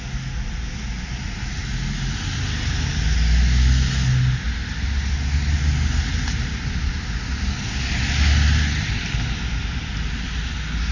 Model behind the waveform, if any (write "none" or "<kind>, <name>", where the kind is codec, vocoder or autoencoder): none